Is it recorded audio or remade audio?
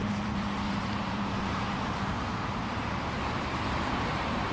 remade